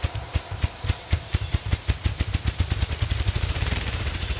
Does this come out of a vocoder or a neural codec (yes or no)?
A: yes